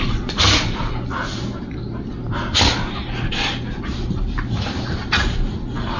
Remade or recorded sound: recorded